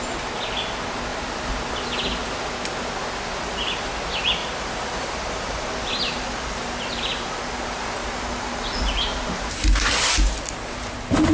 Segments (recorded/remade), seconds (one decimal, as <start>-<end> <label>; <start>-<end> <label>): 0.0-1.1 recorded; 1.1-1.7 remade; 1.7-4.4 recorded; 4.4-7.4 remade; 7.4-8.0 recorded; 8.0-10.1 remade; 10.1-11.3 recorded